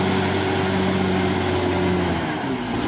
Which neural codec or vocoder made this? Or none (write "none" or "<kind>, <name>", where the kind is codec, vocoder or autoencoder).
none